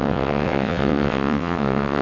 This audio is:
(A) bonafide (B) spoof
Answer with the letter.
B